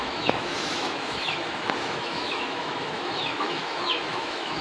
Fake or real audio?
fake